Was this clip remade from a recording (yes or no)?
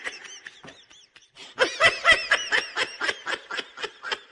no